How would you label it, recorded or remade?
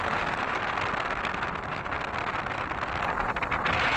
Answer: recorded